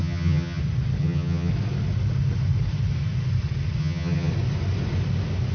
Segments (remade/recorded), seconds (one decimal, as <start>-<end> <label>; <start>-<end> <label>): 0.0-0.6 remade; 0.6-1.0 recorded; 1.0-1.5 remade; 1.5-3.8 recorded; 3.8-4.3 remade; 4.3-5.5 recorded